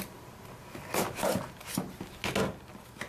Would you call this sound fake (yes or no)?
no